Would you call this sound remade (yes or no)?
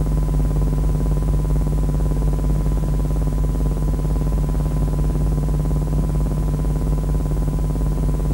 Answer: no